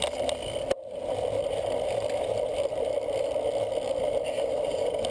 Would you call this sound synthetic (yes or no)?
no